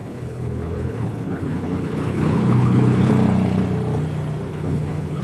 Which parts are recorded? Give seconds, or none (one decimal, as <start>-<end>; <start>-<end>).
3.1-4.5